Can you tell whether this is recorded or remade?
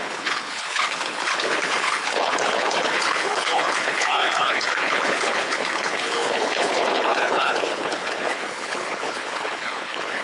remade